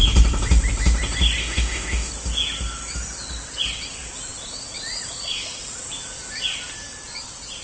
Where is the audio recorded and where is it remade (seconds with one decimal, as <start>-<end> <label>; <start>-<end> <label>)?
0.0-1.4 recorded; 1.4-2.1 remade; 2.1-7.6 recorded